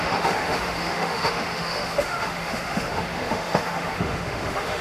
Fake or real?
fake